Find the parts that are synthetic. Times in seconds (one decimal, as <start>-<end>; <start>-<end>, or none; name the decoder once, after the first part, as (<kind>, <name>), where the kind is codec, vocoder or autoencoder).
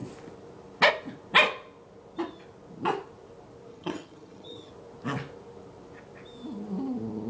3.7-4.7 (vocoder, HiFi-GAN)